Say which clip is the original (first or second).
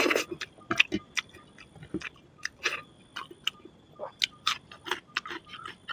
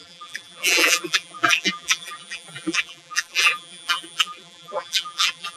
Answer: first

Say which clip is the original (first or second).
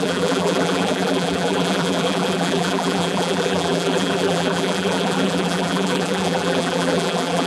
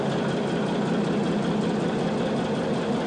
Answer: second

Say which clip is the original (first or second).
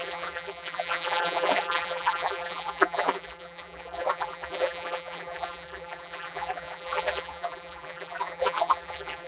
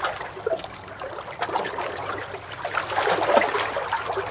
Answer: second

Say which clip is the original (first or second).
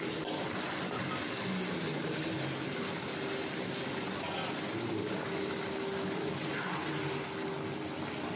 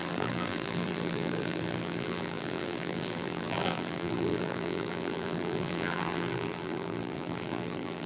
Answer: first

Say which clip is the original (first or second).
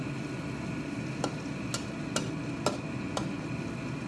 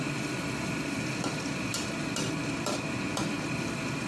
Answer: first